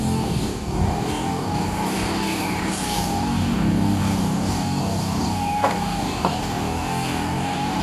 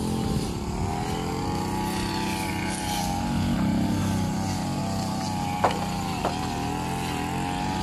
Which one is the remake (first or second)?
first